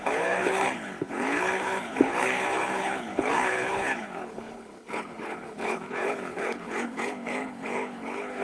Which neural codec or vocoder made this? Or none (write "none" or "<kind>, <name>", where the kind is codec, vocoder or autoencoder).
codec, HILCodec